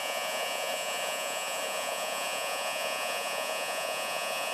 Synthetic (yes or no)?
yes